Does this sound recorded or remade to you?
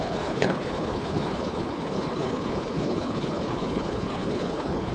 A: remade